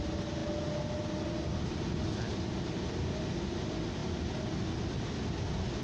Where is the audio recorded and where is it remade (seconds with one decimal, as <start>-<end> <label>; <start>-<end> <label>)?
0.0-5.8 recorded